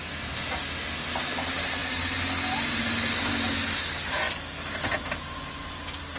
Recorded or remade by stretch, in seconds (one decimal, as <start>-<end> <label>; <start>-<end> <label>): 0.0-6.2 recorded